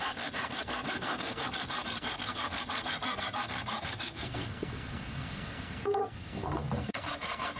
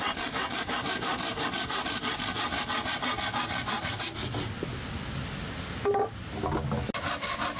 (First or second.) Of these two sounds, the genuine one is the second